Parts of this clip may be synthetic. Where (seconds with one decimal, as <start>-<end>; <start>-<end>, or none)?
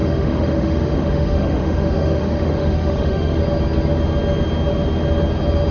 0.0-3.4